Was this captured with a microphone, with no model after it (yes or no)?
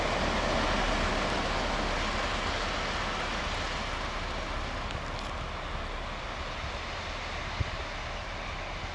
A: yes